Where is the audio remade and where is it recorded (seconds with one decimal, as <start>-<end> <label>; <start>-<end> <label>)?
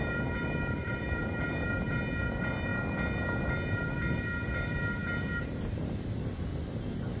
0.0-1.9 remade; 1.9-6.5 recorded; 6.5-7.2 remade